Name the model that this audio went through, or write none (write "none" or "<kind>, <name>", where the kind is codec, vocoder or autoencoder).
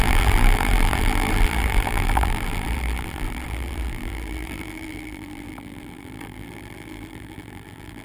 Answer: vocoder, BigVGAN v2